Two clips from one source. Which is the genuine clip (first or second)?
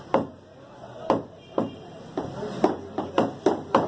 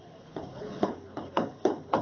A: first